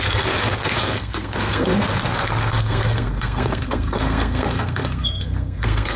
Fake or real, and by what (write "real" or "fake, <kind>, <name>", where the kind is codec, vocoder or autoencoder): fake, codec, SNAC